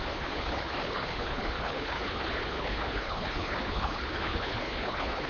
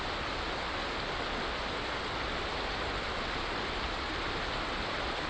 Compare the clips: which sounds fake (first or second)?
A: first